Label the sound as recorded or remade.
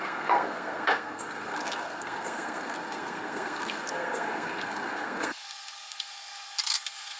remade